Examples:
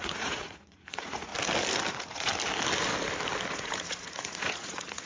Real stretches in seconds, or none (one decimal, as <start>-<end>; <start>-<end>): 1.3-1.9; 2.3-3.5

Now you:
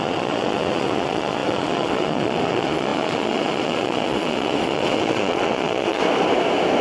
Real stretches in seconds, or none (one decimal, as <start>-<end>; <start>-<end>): 6.0-6.8

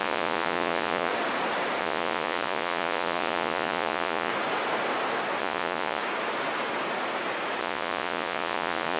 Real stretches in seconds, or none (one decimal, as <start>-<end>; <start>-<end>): 1.1-1.8; 4.3-5.4; 6.0-7.6